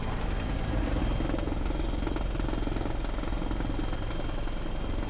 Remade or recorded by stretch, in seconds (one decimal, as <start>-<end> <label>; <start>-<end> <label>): 0.0-5.1 recorded